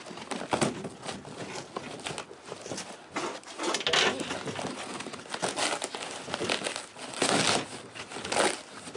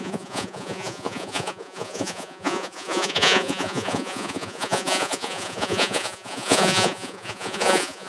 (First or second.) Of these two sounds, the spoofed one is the second